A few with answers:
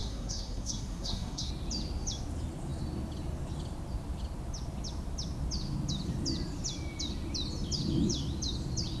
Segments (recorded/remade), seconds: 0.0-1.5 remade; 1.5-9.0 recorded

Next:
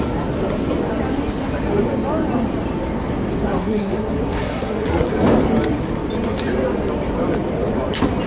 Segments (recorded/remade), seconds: 0.0-3.6 recorded; 3.6-5.1 remade; 5.1-8.3 recorded

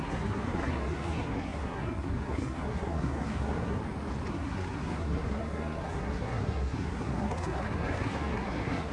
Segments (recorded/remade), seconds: 0.0-3.8 remade; 3.8-4.3 recorded; 4.3-8.9 remade

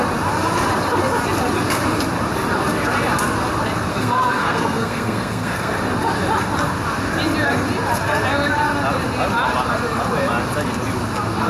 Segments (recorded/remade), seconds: 0.0-3.9 recorded; 3.9-5.7 remade; 5.7-11.5 recorded

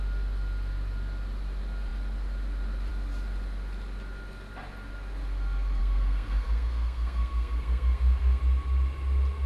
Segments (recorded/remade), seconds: 0.0-5.8 recorded; 5.8-8.4 remade; 8.4-9.5 recorded